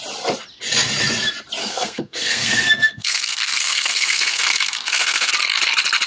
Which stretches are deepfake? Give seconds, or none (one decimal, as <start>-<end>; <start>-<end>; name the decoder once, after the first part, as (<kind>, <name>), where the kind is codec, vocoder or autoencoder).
1.6-5.3 (codec, SNAC)